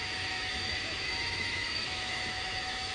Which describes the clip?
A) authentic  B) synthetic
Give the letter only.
B